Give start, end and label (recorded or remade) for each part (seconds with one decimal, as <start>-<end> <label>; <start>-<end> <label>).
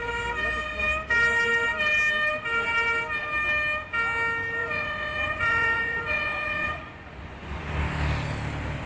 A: 0.0-4.6 recorded; 4.6-7.6 remade; 7.6-8.9 recorded